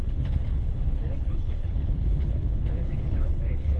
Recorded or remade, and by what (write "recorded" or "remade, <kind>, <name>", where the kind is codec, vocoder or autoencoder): remade, codec, HILCodec